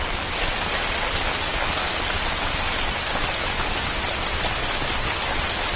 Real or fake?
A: real